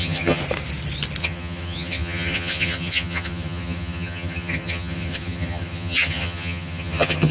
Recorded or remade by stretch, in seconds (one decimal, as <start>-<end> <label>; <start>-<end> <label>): 0.0-0.4 remade; 0.4-1.2 recorded; 1.2-7.3 remade